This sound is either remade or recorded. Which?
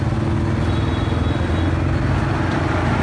recorded